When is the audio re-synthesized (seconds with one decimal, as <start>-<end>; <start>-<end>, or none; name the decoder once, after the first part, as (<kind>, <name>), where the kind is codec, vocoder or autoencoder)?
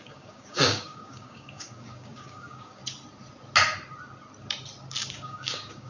0.0-2.8 (codec, DAC); 5.1-5.9